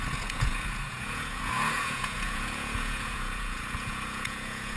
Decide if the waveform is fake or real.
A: fake